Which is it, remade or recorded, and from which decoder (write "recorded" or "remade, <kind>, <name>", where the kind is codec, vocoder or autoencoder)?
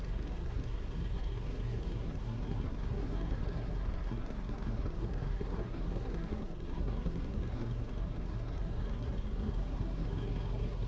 remade, codec, SNAC